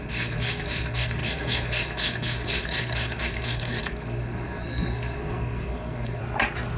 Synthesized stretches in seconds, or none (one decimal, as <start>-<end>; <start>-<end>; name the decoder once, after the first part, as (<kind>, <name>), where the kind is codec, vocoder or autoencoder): 0.0-6.2 (codec, SNAC)